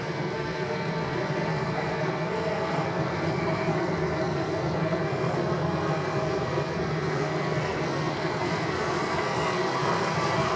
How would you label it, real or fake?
fake